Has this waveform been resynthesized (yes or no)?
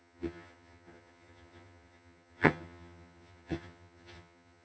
yes